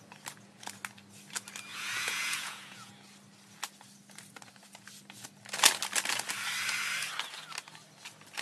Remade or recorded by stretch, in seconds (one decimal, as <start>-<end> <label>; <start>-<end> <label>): 0.0-1.7 recorded; 1.7-2.9 remade; 2.9-8.4 recorded